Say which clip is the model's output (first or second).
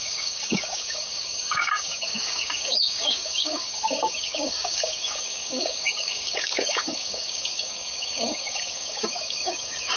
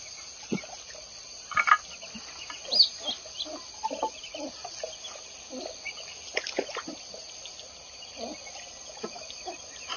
first